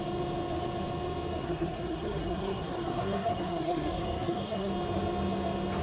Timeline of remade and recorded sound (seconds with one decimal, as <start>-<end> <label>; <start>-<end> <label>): 0.0-1.4 recorded; 1.4-4.7 remade; 4.7-5.8 recorded